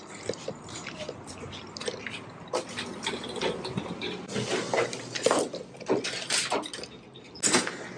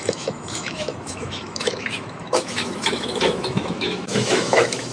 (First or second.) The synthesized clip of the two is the second